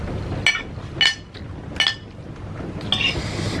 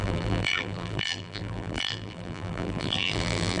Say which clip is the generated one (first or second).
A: second